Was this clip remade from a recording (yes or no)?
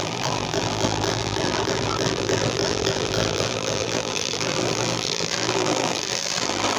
yes